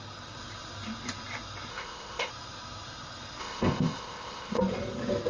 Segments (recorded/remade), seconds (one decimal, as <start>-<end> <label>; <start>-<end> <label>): 0.0-1.7 recorded; 1.7-2.3 remade; 2.3-3.4 recorded; 3.4-4.6 remade; 4.6-5.3 recorded